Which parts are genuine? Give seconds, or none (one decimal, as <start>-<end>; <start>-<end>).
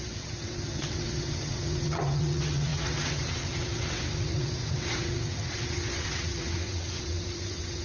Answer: none